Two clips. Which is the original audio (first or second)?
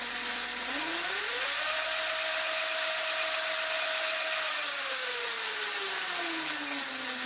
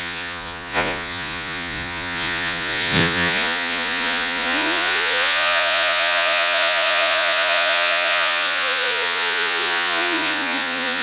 first